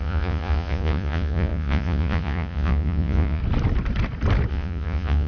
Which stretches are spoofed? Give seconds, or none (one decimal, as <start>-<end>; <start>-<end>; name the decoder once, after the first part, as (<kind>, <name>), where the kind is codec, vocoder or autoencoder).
0.0-3.4 (vocoder, Vocos); 4.5-5.3